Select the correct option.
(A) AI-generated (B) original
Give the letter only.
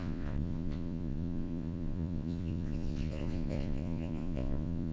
A